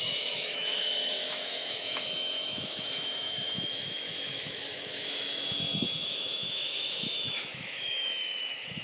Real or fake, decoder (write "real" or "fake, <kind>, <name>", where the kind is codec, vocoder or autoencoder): fake, autoencoder, DAC-VAE